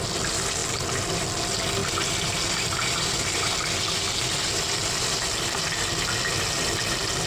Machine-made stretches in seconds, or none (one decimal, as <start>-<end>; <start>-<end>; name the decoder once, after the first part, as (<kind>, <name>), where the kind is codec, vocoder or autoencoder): 0.6-1.3 (vocoder, BigVGAN v2); 1.8-4.9